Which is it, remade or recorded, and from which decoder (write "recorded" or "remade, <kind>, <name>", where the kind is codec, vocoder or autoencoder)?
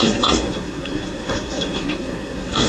remade, codec, SNAC